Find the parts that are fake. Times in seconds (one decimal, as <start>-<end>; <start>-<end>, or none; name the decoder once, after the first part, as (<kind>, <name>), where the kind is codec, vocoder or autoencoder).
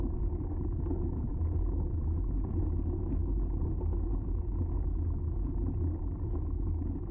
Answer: none